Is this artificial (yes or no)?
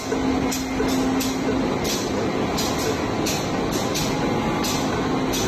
no